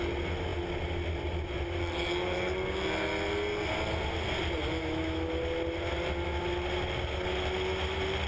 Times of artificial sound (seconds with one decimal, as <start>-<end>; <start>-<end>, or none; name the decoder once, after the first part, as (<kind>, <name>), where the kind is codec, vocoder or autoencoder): 4.8-5.3 (autoencoder, DAC-VAE)